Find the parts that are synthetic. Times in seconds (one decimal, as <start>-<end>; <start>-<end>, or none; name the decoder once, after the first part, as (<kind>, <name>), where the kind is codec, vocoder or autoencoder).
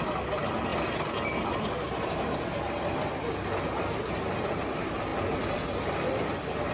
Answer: none